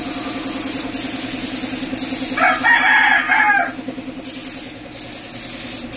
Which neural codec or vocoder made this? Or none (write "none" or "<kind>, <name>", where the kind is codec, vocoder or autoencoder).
none